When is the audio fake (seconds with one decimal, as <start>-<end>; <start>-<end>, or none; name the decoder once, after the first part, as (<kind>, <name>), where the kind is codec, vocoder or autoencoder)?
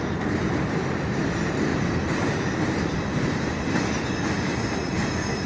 1.7-3.7 (vocoder, BigVGAN v2)